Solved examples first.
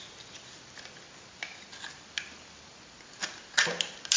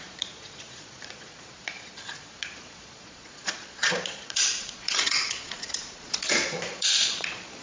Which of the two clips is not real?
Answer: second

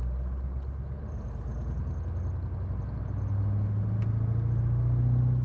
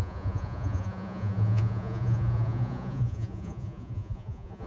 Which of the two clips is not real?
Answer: second